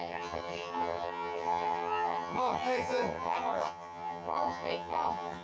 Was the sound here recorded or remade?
remade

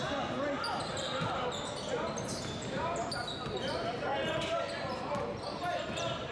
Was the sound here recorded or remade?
recorded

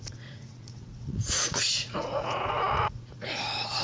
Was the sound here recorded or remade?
remade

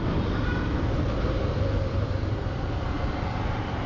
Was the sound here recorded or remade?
remade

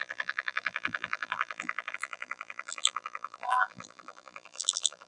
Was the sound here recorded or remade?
remade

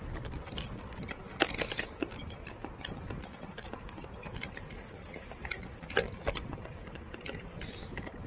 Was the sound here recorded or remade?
recorded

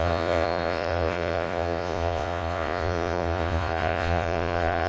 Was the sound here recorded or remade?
remade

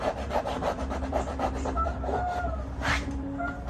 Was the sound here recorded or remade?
remade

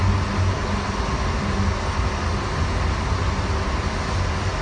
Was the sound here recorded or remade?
recorded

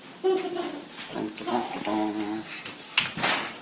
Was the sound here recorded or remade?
recorded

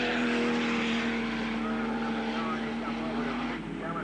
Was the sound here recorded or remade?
recorded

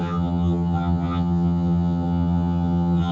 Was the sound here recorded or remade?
remade